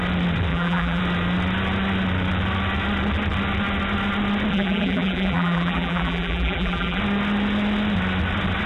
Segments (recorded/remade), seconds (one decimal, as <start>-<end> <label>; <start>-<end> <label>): 0.0-0.5 recorded; 0.5-1.0 remade; 1.0-4.5 recorded; 4.5-7.0 remade; 7.0-8.7 recorded